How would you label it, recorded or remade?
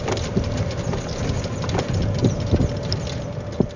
recorded